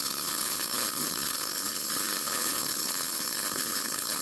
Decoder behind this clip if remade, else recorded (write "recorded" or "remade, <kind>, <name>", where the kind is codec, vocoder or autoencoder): remade, codec, HILCodec